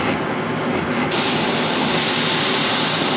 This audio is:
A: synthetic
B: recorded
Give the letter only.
B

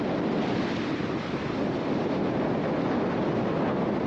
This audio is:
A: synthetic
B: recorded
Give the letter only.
B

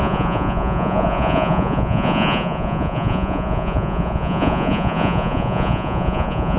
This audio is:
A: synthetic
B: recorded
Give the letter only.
A